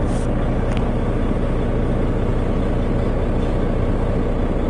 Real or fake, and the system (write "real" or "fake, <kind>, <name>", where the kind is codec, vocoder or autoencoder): real